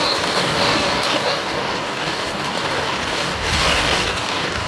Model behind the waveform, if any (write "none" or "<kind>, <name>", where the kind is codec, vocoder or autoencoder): codec, DAC